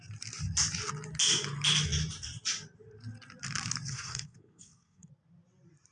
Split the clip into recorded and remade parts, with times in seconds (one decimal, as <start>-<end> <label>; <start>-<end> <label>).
0.0-3.9 recorded; 3.9-5.1 remade; 5.1-5.9 recorded